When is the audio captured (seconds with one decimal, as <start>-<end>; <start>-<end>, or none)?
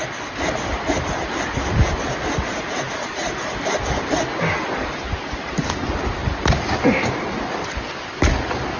0.0-8.8